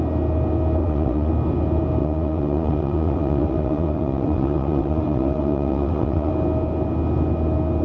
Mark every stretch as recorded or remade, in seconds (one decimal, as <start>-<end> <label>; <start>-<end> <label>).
0.0-0.8 recorded; 0.8-1.3 remade; 1.3-2.0 recorded; 2.0-6.3 remade; 6.3-7.8 recorded